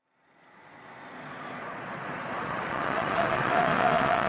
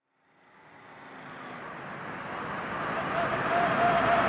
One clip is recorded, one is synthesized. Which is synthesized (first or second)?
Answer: first